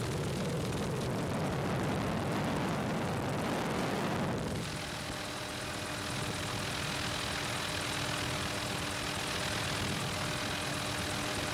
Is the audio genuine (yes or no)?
yes